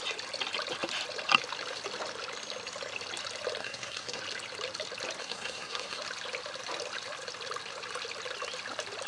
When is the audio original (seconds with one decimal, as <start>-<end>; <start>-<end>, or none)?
0.0-3.6; 4.2-5.2; 6.0-9.1